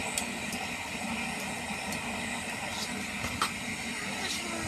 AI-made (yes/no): no